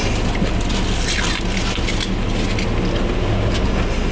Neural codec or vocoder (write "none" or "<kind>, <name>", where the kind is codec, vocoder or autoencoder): none